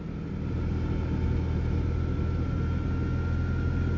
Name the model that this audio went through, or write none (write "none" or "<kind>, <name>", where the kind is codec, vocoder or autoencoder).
none